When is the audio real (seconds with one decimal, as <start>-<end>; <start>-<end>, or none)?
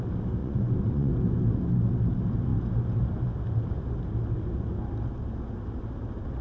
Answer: 0.0-0.4; 1.1-6.4